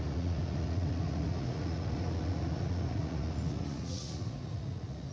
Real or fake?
fake